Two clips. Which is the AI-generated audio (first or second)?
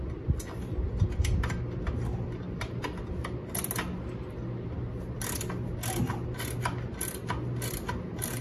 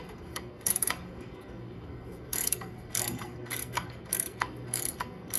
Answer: second